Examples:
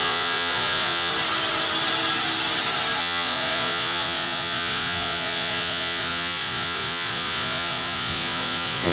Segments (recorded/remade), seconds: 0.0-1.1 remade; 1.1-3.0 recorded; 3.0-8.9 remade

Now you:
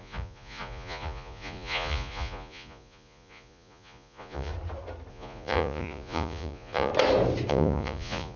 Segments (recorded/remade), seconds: 0.0-4.5 remade; 4.5-5.1 recorded; 5.1-6.9 remade; 6.9-7.5 recorded; 7.5-8.4 remade

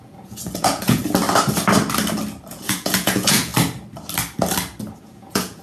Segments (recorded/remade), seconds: 0.0-1.0 remade; 1.0-2.5 recorded; 2.5-3.5 remade; 3.5-5.0 recorded; 5.0-5.6 remade

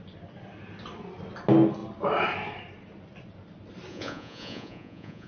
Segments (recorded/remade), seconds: 0.0-3.9 recorded; 3.9-5.3 remade

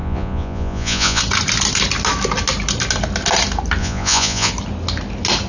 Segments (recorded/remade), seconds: 0.0-1.2 remade; 1.2-3.8 recorded; 3.8-4.5 remade; 4.5-5.5 recorded